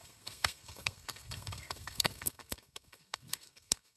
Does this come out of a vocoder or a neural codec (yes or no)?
yes